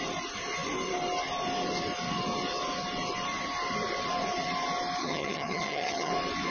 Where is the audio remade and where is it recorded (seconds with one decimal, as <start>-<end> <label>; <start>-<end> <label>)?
0.0-5.0 recorded; 5.0-6.1 remade; 6.1-6.5 recorded